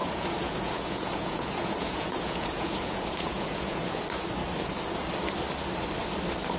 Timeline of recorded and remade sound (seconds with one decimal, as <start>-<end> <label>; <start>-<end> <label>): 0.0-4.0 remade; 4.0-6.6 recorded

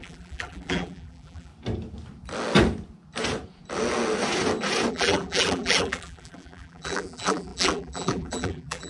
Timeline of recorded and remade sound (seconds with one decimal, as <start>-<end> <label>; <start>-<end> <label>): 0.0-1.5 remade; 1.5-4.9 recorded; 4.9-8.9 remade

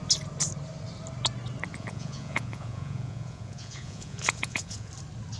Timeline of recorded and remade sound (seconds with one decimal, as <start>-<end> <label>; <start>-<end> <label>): 0.0-1.7 recorded; 1.7-4.9 remade; 4.9-5.4 recorded